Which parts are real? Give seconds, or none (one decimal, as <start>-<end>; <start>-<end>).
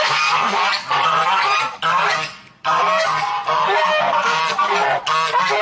0.6-4.0; 4.4-5.6